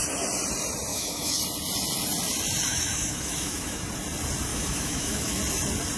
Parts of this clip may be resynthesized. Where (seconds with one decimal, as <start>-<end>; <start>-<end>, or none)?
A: 0.9-1.4; 2.7-3.8; 4.5-5.4